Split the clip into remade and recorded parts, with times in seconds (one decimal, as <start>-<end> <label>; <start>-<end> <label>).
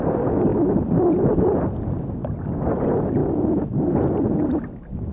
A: 0.0-5.1 recorded